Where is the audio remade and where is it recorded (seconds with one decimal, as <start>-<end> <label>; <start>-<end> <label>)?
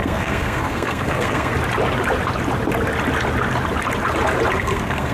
0.0-1.5 remade; 1.5-4.6 recorded; 4.6-5.1 remade